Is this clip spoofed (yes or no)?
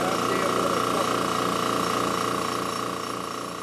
no